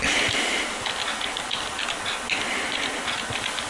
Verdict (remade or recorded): recorded